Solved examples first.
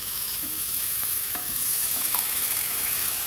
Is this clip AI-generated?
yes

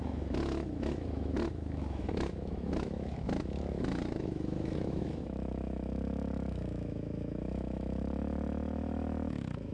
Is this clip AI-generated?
yes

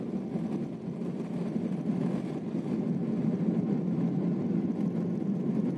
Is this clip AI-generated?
no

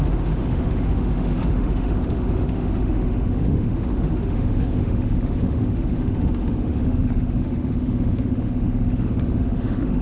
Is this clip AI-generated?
yes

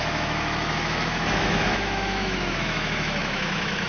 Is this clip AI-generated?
yes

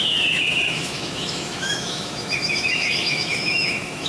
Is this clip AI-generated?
yes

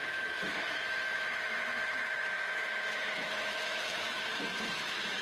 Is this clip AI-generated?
yes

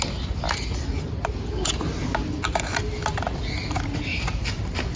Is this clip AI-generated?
no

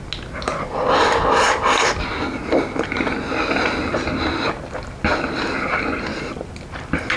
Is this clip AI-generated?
no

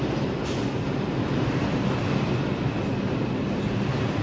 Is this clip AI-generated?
no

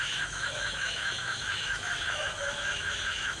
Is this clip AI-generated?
yes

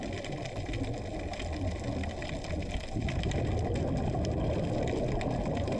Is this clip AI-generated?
no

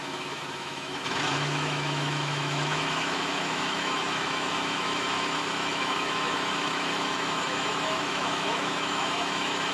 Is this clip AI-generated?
yes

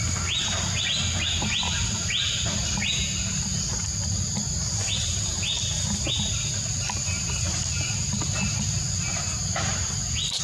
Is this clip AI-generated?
no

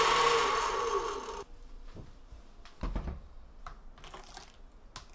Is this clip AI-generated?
no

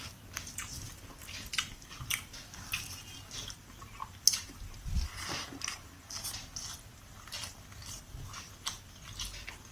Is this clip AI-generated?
no